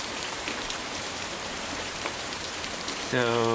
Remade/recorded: remade